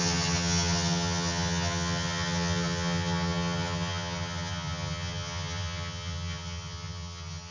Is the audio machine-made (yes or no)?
yes